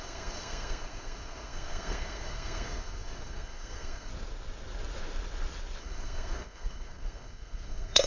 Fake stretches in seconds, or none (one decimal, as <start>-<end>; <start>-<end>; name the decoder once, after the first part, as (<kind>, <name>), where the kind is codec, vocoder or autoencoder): 0.0-4.1 (codec, SNAC); 5.8-8.1